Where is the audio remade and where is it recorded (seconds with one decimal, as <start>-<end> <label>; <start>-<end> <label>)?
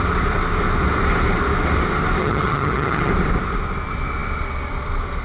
0.0-2.2 recorded; 2.2-3.1 remade; 3.1-5.2 recorded